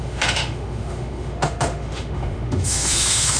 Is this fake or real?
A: fake